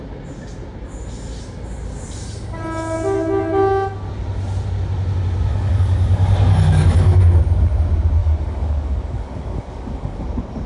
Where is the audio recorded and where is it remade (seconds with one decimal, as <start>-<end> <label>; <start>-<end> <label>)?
0.0-5.5 recorded; 5.5-7.2 remade; 7.2-8.2 recorded; 8.2-10.2 remade; 10.2-10.7 recorded